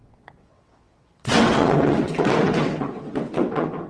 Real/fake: fake